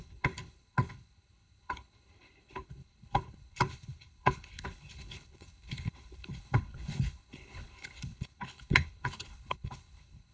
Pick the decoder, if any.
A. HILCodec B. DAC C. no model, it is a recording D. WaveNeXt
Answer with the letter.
A